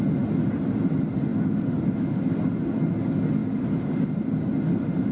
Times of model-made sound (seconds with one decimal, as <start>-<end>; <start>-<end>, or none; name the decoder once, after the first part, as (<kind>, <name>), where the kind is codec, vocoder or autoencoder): 1.3-2.1 (vocoder, BigVGAN v2)